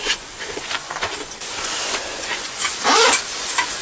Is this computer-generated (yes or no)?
yes